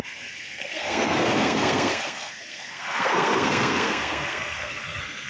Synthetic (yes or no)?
yes